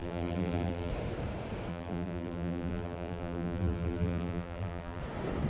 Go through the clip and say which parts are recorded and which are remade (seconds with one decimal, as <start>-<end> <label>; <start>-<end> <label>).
0.0-0.9 remade; 0.9-1.7 recorded; 1.7-5.0 remade; 5.0-5.5 recorded